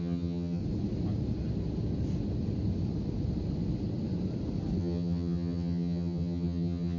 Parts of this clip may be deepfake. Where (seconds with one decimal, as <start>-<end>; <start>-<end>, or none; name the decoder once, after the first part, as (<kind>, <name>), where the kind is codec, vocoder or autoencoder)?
0.0-0.6 (vocoder, HiFi-GAN); 4.8-7.0